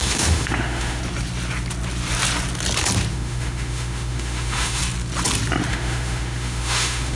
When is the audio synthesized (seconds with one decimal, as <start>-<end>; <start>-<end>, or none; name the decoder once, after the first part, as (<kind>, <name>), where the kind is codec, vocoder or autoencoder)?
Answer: 0.0-1.0 (autoencoder, DAC-VAE); 3.1-4.8; 5.7-7.2